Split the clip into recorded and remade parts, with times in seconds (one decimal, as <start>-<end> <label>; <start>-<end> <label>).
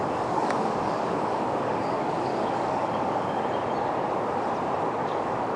0.0-3.4 remade; 3.4-5.0 recorded; 5.0-5.6 remade